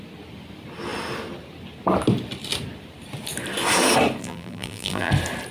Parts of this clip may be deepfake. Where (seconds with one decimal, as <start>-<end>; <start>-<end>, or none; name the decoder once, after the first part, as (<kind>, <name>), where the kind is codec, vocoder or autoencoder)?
4.2-5.1 (vocoder, BigVGAN v2)